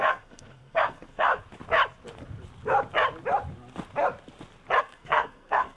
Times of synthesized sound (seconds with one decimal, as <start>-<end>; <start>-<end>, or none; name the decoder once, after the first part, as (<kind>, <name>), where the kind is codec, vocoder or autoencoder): 0.0-1.3 (codec, SNAC); 4.8-5.8